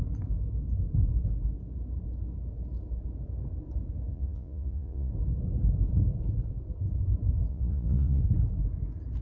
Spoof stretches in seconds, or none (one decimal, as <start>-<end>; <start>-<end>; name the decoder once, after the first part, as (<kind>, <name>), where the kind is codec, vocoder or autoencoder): 4.1-5.1 (vocoder, Vocos); 7.5-8.2